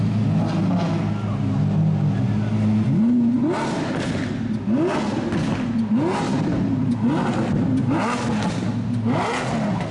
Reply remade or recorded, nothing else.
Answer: recorded